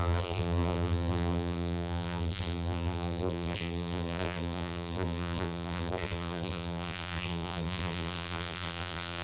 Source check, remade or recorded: remade